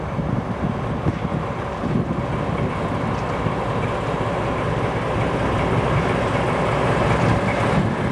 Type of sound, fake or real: real